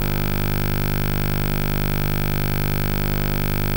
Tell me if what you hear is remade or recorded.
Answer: recorded